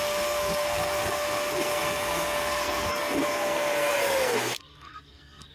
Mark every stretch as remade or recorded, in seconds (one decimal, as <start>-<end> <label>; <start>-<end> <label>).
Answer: 0.0-5.5 remade